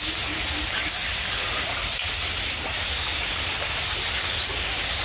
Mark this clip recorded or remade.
recorded